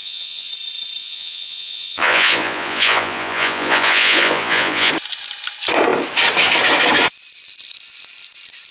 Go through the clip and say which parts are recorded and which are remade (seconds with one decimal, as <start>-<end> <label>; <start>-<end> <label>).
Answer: 0.0-0.5 remade; 0.5-1.0 recorded; 1.0-4.9 remade; 4.9-8.7 recorded